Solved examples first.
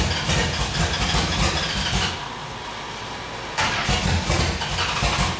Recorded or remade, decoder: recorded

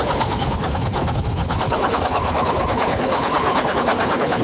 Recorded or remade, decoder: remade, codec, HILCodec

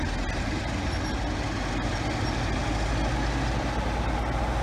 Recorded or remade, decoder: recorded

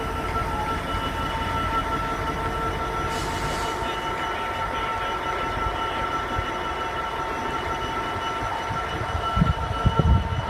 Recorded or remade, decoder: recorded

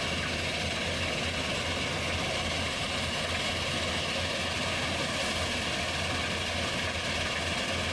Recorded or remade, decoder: recorded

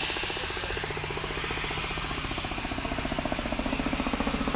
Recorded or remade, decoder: recorded